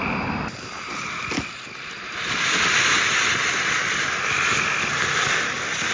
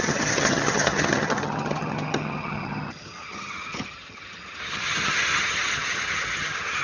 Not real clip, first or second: second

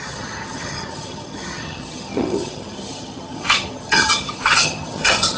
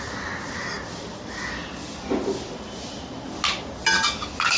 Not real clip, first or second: first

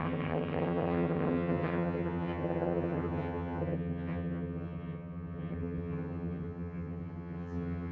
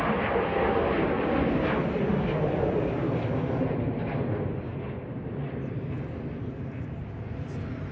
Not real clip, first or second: first